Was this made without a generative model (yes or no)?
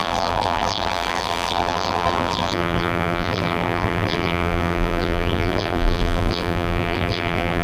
no